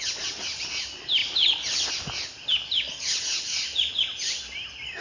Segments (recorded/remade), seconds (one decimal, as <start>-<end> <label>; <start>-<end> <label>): 0.0-5.0 recorded